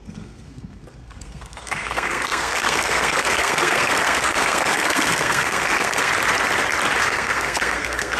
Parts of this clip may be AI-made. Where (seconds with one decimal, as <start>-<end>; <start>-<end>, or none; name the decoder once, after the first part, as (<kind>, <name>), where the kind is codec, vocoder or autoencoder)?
0.0-6.1 (codec, SNAC); 7.0-8.2